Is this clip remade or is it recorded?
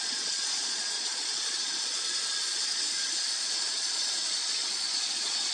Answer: remade